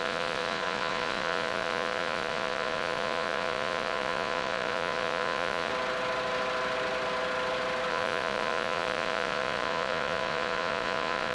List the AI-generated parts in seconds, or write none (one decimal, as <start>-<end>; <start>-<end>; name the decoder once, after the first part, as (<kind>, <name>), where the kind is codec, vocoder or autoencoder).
0.0-5.7 (vocoder, Vocos); 7.9-11.3